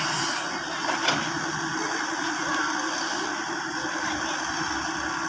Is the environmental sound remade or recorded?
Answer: recorded